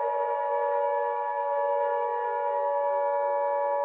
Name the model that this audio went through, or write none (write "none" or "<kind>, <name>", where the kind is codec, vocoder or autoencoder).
autoencoder, DAC-VAE